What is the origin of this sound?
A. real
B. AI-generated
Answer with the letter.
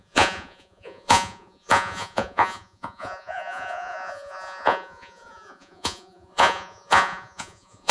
B